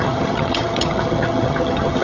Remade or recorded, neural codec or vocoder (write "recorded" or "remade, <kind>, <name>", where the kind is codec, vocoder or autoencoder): remade, vocoder, HiFi-GAN